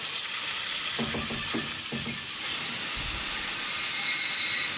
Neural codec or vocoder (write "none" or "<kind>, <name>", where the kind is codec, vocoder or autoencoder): none